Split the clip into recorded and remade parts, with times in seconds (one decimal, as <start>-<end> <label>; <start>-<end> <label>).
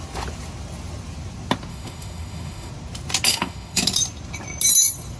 0.0-1.7 recorded; 1.7-2.7 remade; 2.7-3.3 recorded; 3.3-3.8 remade; 3.8-5.2 recorded